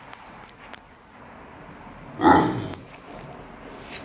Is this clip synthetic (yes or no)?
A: no